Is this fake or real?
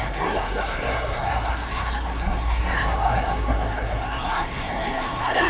fake